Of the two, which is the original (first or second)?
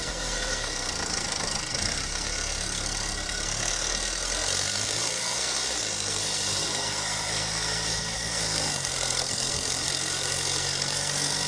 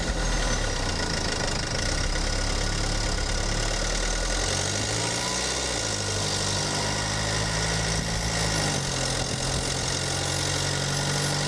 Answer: second